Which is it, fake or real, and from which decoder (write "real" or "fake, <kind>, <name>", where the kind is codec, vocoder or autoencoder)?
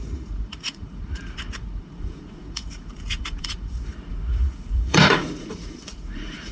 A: fake, vocoder, Vocos